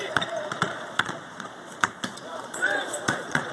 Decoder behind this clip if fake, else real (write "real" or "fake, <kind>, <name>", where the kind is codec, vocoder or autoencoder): fake, vocoder, Vocos